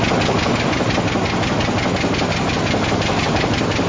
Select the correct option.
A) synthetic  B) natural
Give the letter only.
B